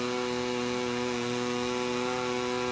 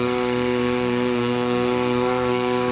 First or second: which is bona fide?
first